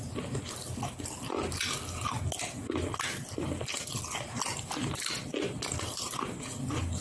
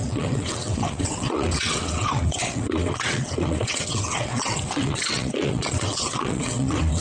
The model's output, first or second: second